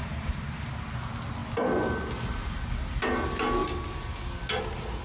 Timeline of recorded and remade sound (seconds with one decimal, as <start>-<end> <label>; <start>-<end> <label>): 0.0-0.7 remade; 0.7-3.6 recorded; 3.6-4.3 remade; 4.3-5.0 recorded